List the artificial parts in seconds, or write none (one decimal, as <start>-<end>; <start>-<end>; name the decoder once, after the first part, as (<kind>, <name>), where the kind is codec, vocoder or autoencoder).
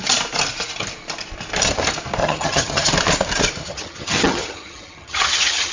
2.2-2.9 (vocoder, HiFi-GAN); 3.6-5.7